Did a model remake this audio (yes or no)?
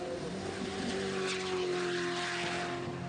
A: no